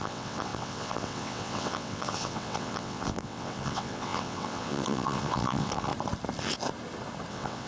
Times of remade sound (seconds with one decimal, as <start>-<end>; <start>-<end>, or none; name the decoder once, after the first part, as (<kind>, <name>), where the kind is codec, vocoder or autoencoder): 0.0-5.9 (vocoder, WaveNeXt); 7.3-7.7